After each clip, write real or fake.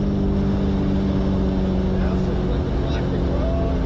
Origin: real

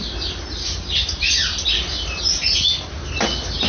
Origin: real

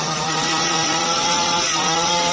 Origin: fake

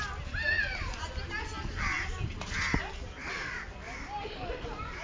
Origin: real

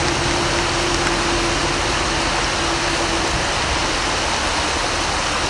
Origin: real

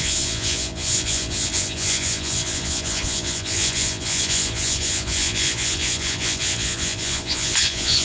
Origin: fake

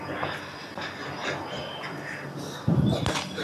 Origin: real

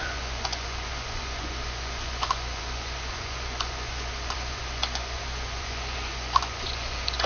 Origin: fake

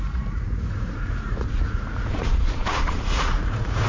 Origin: fake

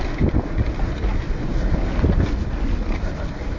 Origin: real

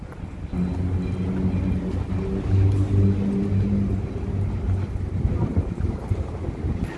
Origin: real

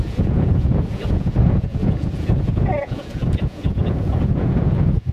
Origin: fake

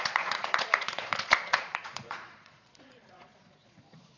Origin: fake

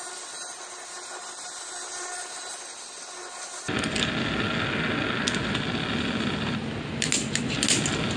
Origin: real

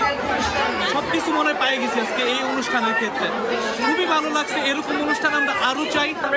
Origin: real